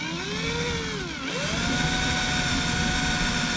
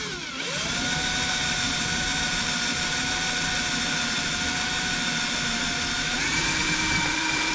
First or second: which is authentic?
first